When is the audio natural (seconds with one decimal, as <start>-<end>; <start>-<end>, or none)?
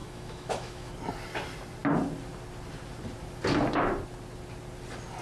0.9-5.2